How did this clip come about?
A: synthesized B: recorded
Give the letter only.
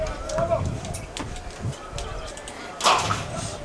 B